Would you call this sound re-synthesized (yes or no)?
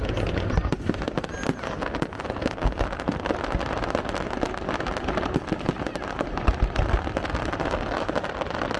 no